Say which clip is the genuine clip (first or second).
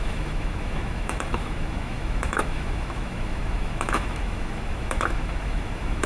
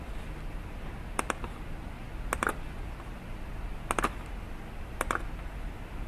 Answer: second